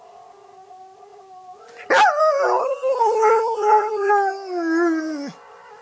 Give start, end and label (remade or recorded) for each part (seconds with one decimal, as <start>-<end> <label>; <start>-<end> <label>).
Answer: 0.0-2.6 recorded; 2.6-4.1 remade; 4.1-5.8 recorded